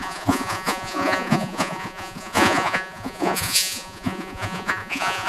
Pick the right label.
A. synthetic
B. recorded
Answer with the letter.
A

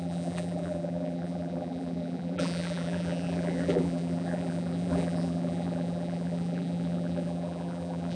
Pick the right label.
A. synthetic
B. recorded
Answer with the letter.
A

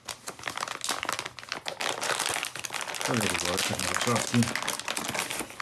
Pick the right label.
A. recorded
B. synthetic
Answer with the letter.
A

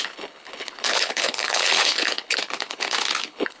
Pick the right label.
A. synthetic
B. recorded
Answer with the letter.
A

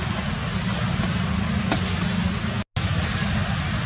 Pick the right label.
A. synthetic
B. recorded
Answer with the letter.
B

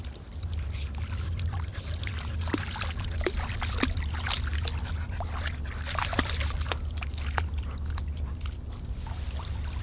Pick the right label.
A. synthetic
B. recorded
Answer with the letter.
B